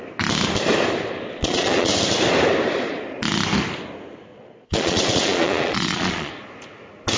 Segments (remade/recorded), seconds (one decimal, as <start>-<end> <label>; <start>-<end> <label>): 0.0-1.4 recorded; 1.4-1.9 remade; 1.9-4.3 recorded; 4.3-6.3 remade; 6.3-7.2 recorded